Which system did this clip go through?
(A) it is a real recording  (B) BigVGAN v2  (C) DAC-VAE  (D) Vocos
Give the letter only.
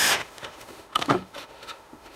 C